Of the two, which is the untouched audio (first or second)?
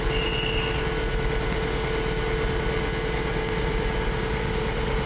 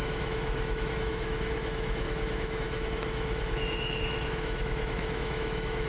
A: first